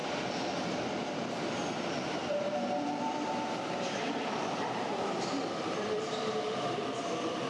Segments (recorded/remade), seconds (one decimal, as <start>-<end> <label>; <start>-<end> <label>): 0.0-7.5 remade